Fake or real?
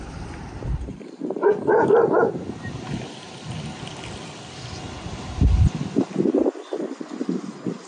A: real